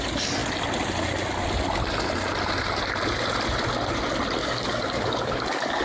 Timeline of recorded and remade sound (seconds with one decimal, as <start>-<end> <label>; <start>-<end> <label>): 0.0-4.4 recorded; 4.4-5.8 remade

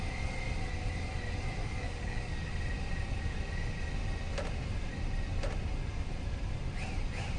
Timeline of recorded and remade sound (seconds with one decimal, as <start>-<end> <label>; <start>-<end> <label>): 0.0-1.6 recorded; 1.6-2.5 remade; 2.5-7.4 recorded

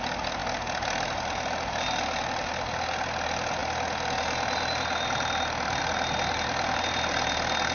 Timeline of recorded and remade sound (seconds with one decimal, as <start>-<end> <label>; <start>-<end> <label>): 0.0-7.7 recorded

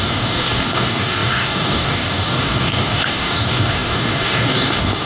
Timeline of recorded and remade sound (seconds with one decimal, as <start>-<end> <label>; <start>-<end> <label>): 0.0-5.1 remade